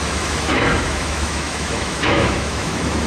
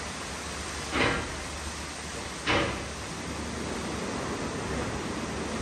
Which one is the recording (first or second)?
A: second